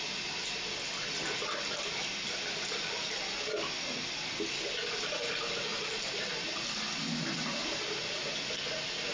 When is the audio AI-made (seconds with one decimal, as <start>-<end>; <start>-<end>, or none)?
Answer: 7.6-8.5